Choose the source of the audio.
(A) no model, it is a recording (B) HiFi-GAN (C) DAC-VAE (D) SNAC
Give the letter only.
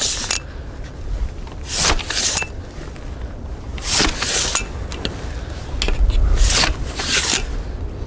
A